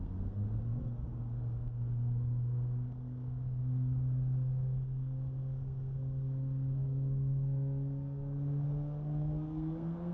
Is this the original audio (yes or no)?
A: no